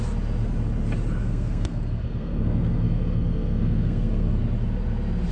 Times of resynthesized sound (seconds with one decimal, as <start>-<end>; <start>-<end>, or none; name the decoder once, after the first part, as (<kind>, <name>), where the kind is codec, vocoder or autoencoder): 1.2-4.4 (codec, SNAC)